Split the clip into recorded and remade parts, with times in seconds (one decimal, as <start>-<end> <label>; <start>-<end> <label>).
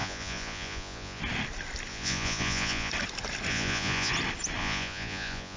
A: 0.0-1.2 remade; 1.2-1.9 recorded; 1.9-2.9 remade; 2.9-3.5 recorded; 3.5-4.1 remade; 4.1-4.6 recorded; 4.6-5.6 remade